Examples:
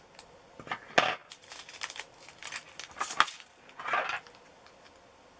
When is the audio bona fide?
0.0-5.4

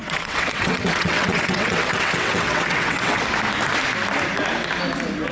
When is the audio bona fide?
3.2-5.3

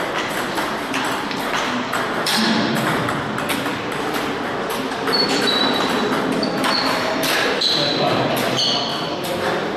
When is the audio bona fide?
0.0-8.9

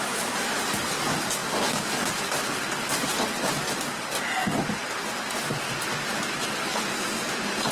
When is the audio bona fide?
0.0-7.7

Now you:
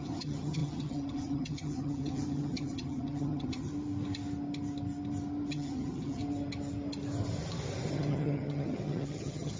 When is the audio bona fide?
3.7-5.5; 6.2-7.9

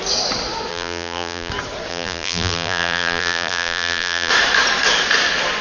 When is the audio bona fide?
0.0-0.7; 1.5-1.9; 4.3-5.6

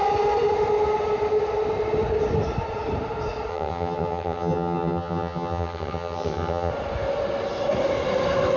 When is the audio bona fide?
0.0-3.5; 6.7-8.6

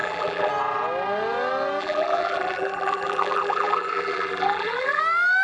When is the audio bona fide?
0.5-1.8; 5.0-5.4